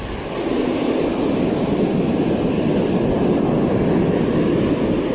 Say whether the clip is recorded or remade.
recorded